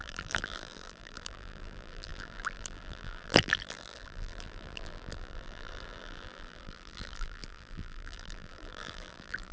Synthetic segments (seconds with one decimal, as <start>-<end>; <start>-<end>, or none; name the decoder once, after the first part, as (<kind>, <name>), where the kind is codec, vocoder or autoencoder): 0.0-9.5 (vocoder, BigVGAN v2)